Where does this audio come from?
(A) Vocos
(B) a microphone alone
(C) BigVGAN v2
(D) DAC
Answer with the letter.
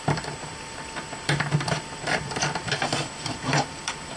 C